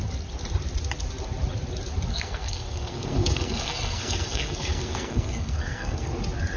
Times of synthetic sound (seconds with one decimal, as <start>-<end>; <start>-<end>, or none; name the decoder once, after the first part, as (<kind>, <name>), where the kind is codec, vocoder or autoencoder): 2.1-6.1 (codec, SNAC)